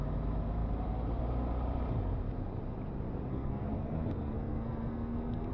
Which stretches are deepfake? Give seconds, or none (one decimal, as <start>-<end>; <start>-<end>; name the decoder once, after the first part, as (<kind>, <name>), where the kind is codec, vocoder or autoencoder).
3.3-5.5 (codec, SNAC)